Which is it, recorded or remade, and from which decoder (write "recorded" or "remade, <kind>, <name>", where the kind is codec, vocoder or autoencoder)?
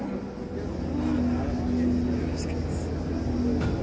recorded